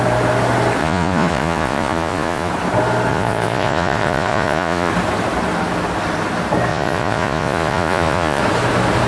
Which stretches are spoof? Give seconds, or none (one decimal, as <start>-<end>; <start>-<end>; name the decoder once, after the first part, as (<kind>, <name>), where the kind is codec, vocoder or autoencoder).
0.8-2.5 (vocoder, Vocos); 3.1-4.9; 6.7-8.4